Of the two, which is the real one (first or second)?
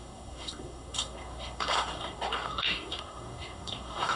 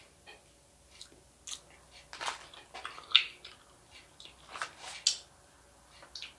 second